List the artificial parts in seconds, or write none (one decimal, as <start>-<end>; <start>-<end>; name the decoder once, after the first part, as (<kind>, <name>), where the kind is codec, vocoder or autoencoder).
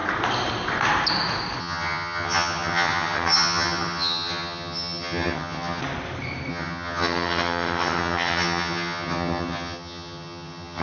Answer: 1.6-5.8 (vocoder, HiFi-GAN); 6.5-10.8